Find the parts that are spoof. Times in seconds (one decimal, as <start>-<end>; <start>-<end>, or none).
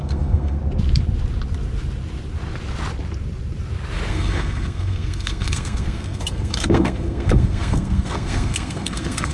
0.0-0.6; 4.1-9.3